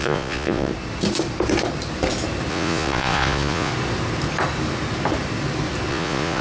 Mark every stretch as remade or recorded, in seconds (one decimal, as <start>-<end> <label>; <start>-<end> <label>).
0.0-0.7 remade; 0.7-2.5 recorded; 2.5-3.7 remade; 3.7-5.9 recorded; 5.9-6.4 remade